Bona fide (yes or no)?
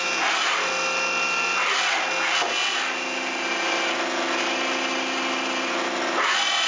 yes